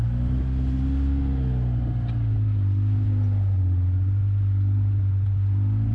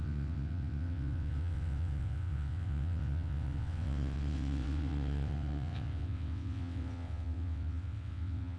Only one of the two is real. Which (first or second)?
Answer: first